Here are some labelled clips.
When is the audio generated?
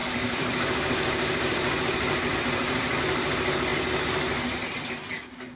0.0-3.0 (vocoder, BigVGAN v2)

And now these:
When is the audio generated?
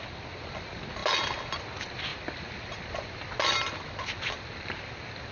2.1-4.8 (vocoder, BigVGAN v2)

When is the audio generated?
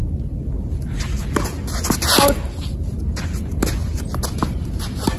none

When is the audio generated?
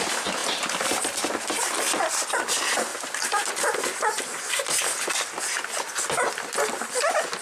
2.9-5.1 (vocoder, BigVGAN v2)